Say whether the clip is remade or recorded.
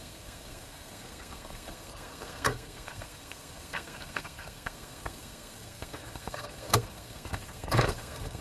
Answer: remade